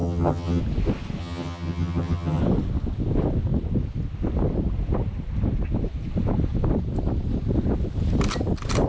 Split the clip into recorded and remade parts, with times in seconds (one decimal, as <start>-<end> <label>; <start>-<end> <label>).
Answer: 0.0-0.6 remade; 0.6-1.2 recorded; 1.2-2.4 remade; 2.4-8.9 recorded

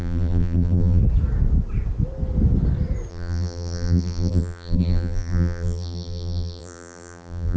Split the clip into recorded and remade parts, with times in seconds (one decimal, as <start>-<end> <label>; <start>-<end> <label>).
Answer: 0.0-1.0 remade; 1.0-3.1 recorded; 3.1-7.6 remade

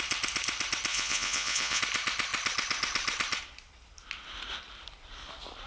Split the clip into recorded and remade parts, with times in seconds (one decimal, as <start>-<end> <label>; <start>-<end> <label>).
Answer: 0.0-0.9 recorded; 0.9-1.8 remade; 1.8-5.7 recorded

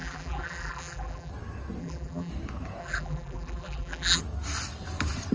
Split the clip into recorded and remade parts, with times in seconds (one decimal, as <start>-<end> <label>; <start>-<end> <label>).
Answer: 0.0-1.3 remade; 1.3-1.8 recorded; 1.8-2.3 remade; 2.3-2.8 recorded; 2.8-4.2 remade; 4.2-5.3 recorded